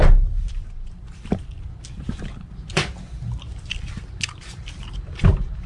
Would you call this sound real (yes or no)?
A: yes